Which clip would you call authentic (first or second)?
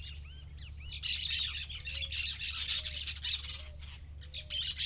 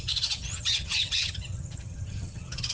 first